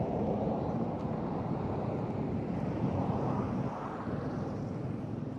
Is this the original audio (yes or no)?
no